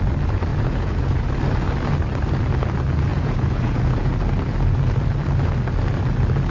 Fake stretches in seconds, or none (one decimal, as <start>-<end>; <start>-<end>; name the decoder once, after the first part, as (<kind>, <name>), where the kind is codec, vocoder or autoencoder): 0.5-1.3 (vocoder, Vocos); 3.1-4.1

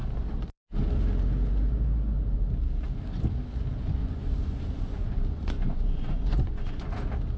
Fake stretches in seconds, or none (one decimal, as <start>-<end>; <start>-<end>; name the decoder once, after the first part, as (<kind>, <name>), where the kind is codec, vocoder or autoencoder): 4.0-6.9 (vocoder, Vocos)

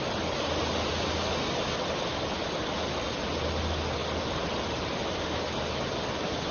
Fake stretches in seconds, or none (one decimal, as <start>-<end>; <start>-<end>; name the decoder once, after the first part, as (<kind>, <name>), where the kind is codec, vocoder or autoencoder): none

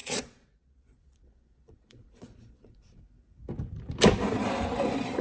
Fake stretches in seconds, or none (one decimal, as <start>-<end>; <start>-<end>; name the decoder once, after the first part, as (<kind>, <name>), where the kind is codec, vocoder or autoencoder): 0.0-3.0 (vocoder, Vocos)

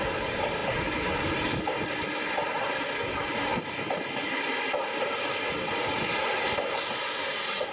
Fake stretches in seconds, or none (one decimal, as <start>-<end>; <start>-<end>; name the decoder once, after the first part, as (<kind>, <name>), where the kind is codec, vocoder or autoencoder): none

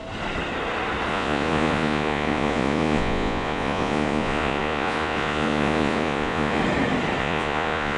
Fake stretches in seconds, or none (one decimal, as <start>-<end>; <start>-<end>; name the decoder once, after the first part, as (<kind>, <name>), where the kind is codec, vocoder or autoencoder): 1.1-6.6 (vocoder, Vocos); 7.2-8.0

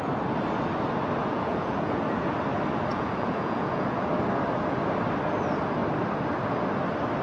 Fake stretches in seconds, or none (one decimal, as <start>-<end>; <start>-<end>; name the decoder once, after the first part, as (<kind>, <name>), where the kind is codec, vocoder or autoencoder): 1.2-2.0 (vocoder, Vocos); 2.9-4.2